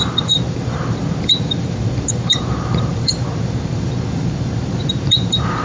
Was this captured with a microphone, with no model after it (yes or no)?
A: no